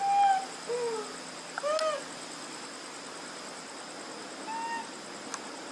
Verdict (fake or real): real